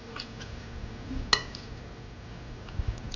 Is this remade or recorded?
recorded